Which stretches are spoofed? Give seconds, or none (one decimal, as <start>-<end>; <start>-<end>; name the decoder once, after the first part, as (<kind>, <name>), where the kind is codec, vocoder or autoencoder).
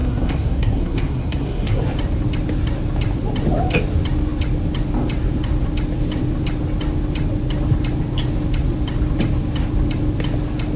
0.0-1.8 (codec, SNAC)